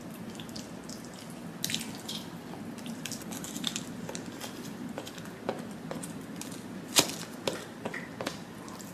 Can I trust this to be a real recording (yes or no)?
yes